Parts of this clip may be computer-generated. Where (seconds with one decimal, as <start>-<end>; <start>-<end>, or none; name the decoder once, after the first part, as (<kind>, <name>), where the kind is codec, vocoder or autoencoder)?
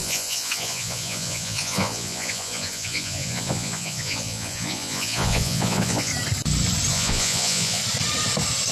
0.0-6.1 (vocoder, Vocos); 6.9-7.8